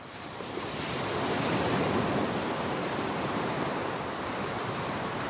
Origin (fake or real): fake